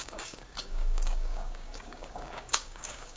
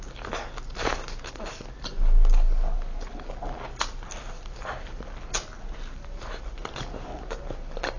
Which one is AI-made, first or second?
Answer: first